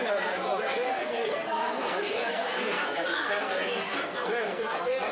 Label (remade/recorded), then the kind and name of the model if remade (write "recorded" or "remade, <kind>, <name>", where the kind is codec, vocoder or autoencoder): remade, codec, SNAC